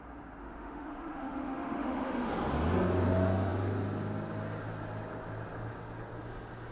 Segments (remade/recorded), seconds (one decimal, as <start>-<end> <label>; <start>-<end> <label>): 0.0-0.4 recorded; 0.4-2.3 remade; 2.3-6.7 recorded